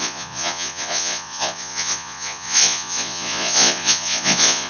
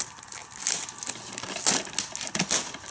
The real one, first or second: second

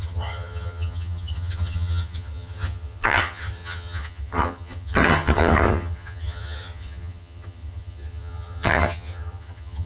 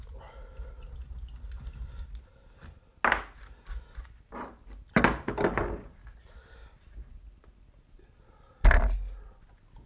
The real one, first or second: second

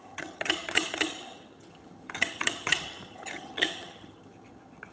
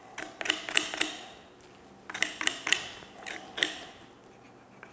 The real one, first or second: second